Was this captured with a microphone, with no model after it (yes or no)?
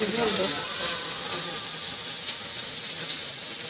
yes